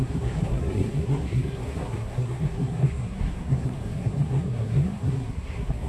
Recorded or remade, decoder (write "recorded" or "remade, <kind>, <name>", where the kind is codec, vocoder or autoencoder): remade, codec, SNAC